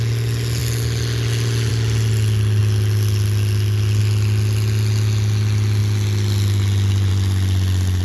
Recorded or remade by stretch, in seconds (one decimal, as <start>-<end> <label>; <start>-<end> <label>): 0.0-8.0 recorded